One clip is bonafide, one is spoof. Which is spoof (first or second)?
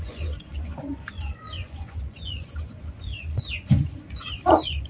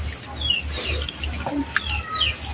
first